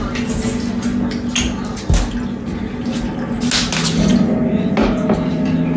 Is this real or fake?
real